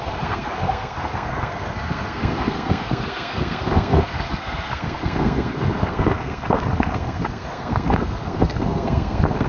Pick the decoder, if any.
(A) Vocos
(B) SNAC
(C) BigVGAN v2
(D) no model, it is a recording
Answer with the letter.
B